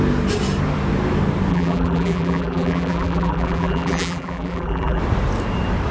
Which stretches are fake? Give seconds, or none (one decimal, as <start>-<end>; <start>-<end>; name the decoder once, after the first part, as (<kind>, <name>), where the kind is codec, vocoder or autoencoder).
1.5-5.0 (vocoder, BigVGAN v2)